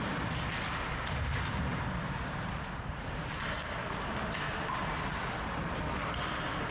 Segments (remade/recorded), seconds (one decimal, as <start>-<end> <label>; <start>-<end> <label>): 0.0-6.7 recorded